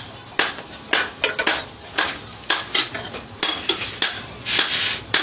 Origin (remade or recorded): recorded